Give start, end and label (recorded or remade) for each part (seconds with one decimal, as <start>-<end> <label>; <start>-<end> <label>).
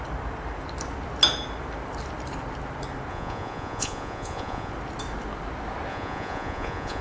0.0-3.1 recorded; 3.1-4.7 remade; 4.7-5.9 recorded; 5.9-7.0 remade